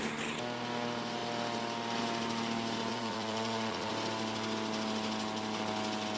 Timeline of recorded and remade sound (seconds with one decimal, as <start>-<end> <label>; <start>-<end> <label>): 0.0-2.9 recorded; 2.9-3.9 remade; 3.9-6.2 recorded